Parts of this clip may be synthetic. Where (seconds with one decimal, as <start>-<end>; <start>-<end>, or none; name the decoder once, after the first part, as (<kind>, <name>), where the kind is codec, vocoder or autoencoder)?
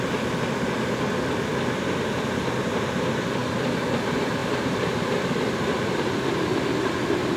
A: 4.4-6.9 (vocoder, BigVGAN v2)